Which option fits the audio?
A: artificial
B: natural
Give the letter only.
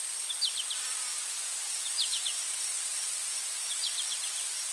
B